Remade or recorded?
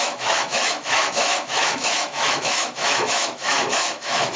remade